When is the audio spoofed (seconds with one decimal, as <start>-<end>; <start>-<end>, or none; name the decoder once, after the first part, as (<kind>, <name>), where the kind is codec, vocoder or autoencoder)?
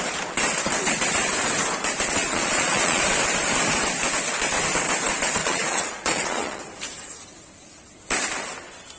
2.2-3.0 (vocoder, Vocos); 5.4-6.6